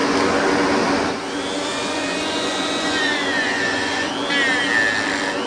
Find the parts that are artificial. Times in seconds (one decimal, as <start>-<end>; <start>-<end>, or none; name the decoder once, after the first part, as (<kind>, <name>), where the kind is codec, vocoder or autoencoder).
1.7-4.1 (vocoder, Vocos)